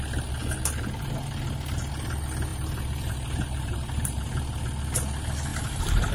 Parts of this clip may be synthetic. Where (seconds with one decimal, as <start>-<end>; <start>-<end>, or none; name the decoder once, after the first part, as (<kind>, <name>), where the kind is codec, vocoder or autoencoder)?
2.5-4.6 (vocoder, BigVGAN v2); 5.5-6.1